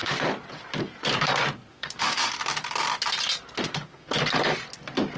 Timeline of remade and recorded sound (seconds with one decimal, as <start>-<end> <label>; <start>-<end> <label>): 0.0-1.7 recorded; 1.7-2.3 remade; 2.3-3.6 recorded; 3.6-4.1 remade; 4.1-5.2 recorded